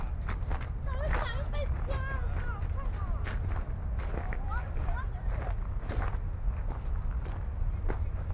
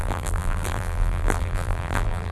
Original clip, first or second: first